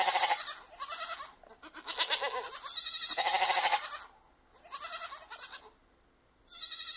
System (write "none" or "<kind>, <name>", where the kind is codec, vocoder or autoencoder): none